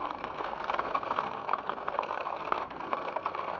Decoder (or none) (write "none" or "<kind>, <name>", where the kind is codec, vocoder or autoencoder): codec, SNAC